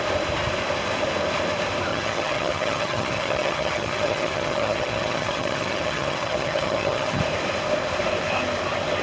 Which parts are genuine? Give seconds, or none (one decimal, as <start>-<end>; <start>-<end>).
0.0-1.9; 7.2-9.0